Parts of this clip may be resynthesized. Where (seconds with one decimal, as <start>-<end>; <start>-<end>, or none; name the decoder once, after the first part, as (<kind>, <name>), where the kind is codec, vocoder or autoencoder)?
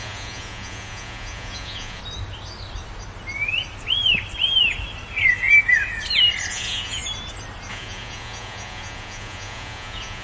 0.0-2.0 (vocoder, Vocos); 6.5-7.0; 7.7-10.2